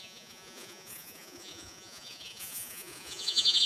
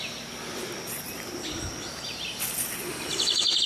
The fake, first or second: first